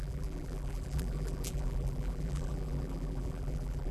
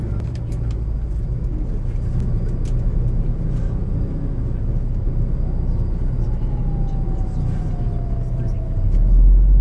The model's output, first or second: first